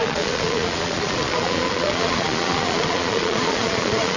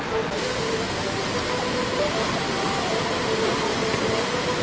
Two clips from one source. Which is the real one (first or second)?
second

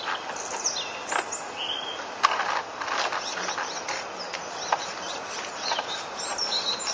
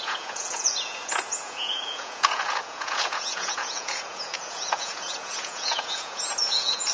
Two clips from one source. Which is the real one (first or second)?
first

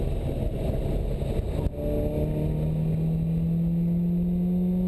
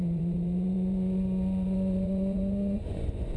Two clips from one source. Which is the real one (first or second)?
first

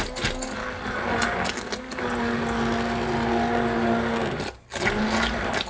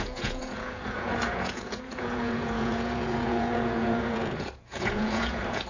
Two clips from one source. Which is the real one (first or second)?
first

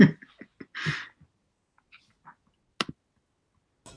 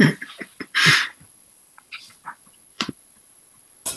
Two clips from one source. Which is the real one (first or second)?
first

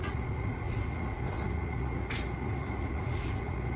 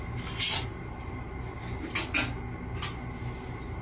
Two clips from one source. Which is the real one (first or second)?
second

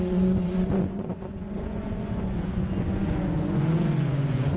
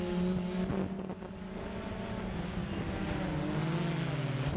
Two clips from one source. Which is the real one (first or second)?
second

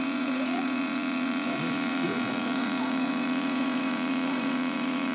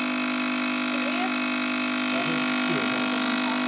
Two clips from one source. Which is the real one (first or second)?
second